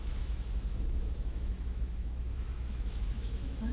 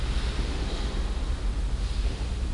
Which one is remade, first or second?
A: first